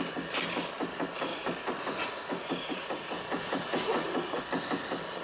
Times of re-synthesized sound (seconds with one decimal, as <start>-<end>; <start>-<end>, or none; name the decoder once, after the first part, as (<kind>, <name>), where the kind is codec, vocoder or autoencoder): 1.3-4.4 (vocoder, Vocos)